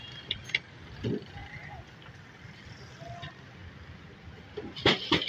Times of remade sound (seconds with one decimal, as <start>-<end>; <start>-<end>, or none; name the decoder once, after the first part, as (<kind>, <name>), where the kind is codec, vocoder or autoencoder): none